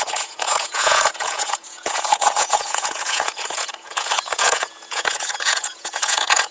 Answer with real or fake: fake